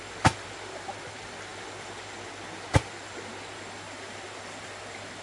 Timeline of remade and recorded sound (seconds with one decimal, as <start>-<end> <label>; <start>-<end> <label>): 0.0-5.2 recorded